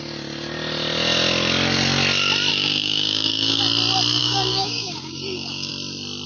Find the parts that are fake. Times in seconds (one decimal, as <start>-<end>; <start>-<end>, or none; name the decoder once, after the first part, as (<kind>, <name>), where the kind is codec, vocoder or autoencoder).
2.5-3.6 (codec, DAC); 4.2-5.7